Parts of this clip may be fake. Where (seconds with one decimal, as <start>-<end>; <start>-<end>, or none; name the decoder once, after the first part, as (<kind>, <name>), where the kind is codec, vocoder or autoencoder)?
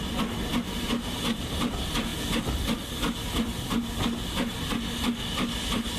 none